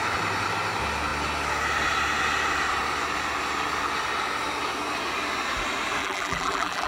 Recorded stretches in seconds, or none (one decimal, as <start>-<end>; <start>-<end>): 0.0-6.0